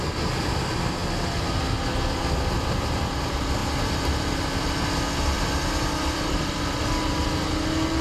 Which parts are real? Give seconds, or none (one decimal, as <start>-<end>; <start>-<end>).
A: 0.0-3.6; 6.8-8.0